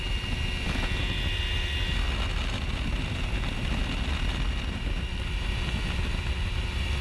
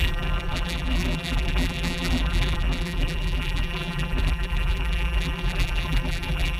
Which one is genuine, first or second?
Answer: first